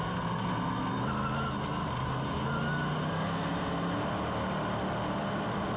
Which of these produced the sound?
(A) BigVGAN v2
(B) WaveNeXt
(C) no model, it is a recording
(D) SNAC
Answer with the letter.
C